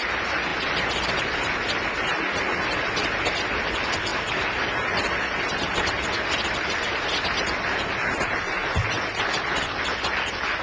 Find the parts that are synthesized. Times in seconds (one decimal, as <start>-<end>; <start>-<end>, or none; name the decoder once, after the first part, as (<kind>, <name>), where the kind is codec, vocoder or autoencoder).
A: none